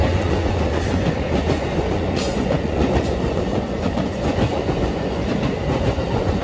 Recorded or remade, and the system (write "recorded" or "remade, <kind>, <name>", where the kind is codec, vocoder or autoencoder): remade, vocoder, Vocos